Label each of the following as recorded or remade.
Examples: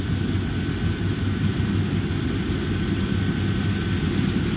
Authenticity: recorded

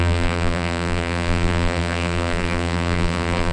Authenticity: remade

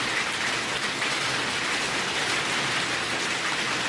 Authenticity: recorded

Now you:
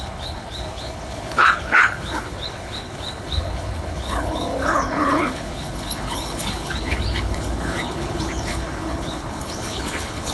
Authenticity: remade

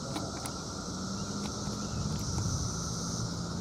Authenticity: recorded